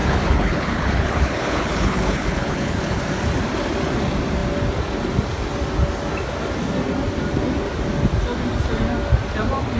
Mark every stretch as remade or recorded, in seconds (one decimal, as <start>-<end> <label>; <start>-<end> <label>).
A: 0.0-3.0 remade; 3.0-9.8 recorded